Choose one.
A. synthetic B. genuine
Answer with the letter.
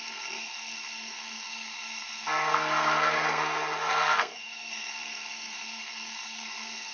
A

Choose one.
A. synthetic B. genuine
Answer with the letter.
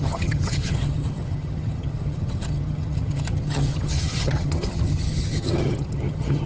A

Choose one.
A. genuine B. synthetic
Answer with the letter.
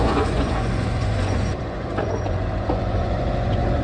B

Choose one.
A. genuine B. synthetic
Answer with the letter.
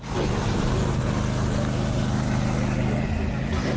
A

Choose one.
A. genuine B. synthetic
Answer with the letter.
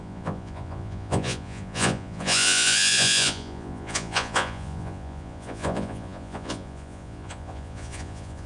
B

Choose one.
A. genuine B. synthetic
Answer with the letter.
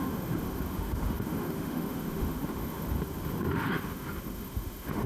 B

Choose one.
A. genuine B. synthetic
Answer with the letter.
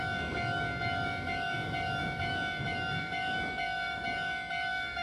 B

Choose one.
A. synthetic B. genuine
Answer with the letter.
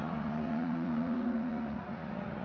A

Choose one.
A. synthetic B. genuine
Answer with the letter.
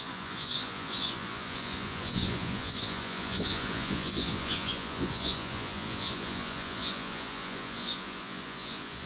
A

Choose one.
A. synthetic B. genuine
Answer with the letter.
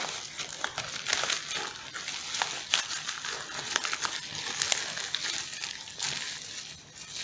B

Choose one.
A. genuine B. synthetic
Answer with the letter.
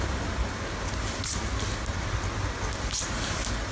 A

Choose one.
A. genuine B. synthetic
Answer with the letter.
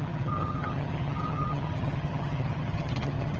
B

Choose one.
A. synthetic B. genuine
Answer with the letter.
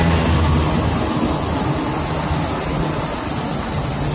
B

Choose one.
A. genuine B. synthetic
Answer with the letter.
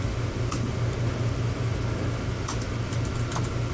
B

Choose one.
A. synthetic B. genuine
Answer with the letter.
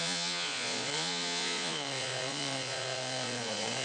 A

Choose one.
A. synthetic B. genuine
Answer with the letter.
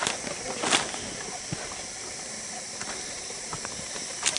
B